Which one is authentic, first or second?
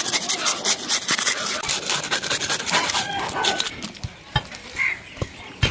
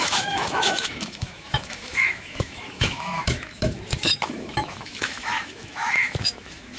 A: first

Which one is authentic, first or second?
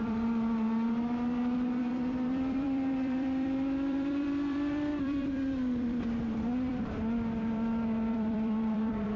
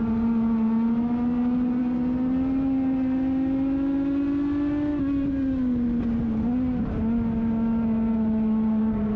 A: second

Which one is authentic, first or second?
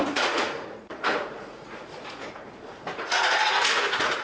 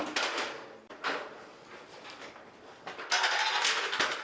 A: second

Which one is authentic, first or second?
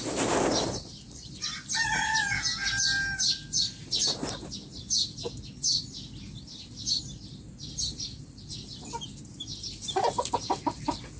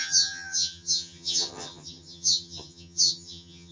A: first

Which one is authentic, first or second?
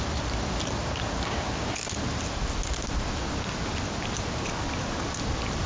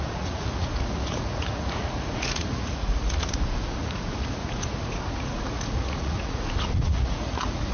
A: first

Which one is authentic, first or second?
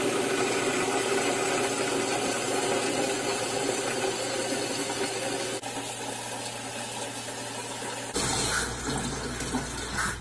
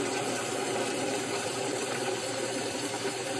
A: first